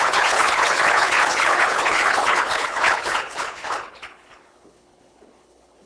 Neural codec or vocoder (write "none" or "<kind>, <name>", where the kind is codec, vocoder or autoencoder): codec, HILCodec